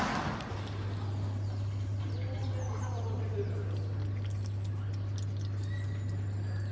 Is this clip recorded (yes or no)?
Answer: yes